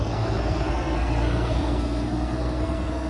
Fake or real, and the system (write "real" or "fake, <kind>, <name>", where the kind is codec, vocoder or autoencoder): fake, codec, SNAC